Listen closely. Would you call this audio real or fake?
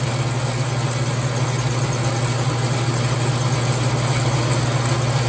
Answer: real